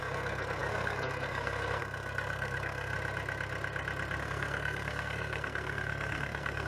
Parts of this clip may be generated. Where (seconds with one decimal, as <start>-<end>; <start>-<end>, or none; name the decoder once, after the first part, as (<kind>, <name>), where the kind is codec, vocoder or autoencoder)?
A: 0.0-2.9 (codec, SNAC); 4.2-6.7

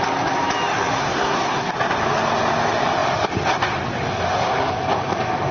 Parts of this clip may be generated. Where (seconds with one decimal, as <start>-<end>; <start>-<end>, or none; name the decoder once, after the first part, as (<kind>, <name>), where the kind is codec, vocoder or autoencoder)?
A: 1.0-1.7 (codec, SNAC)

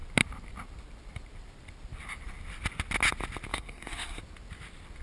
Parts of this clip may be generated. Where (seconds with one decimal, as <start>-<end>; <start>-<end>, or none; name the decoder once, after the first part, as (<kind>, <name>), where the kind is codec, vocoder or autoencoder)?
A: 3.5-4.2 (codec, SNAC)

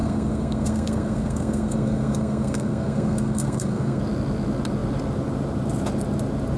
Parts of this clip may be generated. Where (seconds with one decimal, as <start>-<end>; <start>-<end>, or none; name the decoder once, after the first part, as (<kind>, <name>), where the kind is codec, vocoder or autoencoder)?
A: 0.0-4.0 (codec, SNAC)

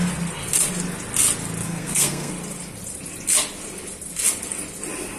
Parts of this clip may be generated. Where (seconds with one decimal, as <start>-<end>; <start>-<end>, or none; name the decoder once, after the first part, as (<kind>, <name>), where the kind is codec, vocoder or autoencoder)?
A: 1.6-2.3 (codec, SNAC)